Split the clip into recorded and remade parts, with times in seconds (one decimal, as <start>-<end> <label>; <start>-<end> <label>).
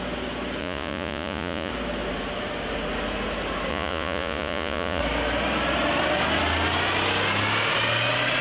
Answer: 0.0-0.6 recorded; 0.6-1.7 remade; 1.7-3.7 recorded; 3.7-5.0 remade; 5.0-8.4 recorded